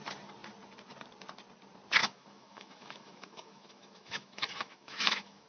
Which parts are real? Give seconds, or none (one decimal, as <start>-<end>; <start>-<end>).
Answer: 0.0-2.0